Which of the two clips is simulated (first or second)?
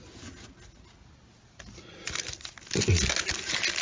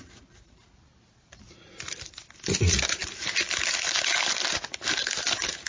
second